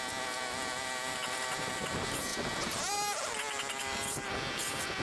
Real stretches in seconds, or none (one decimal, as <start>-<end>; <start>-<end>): 0.0-5.0